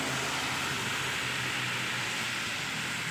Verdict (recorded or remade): recorded